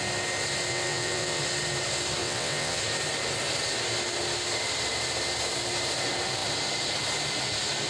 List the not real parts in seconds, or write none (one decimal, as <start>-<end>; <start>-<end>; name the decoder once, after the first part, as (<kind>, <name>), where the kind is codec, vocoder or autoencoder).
0.7-1.4 (vocoder, WaveNeXt); 2.2-2.8